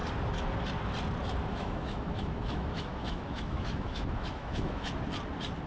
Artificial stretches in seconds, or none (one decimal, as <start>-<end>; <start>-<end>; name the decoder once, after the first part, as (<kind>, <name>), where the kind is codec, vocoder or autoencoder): 1.5-4.9 (autoencoder, DAC-VAE)